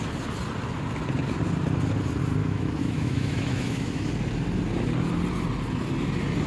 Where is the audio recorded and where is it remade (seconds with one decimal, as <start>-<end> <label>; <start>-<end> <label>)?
0.0-2.4 recorded; 2.4-4.1 remade; 4.1-6.5 recorded